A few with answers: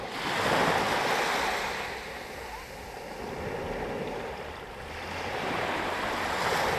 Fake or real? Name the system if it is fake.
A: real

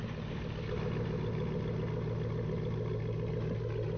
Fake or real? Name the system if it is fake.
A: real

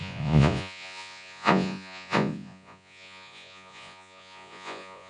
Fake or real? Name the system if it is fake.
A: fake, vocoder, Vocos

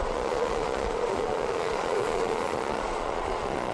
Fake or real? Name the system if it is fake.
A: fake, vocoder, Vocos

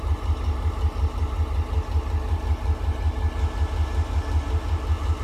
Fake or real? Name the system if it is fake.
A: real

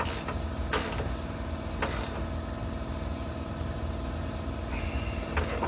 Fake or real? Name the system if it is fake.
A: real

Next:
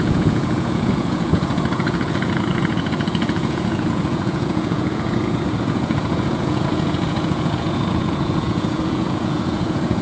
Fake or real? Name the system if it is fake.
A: fake, vocoder, Vocos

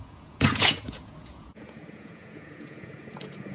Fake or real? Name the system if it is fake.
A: fake, vocoder, Vocos